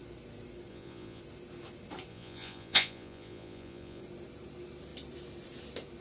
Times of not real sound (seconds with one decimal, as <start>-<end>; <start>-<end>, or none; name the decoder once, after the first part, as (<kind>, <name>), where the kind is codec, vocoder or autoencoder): 0.7-1.2 (vocoder, Vocos); 2.1-4.0